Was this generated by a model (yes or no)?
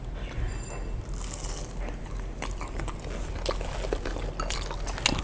no